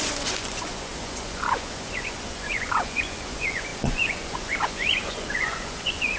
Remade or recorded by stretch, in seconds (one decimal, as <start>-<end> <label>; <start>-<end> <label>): 0.0-6.2 remade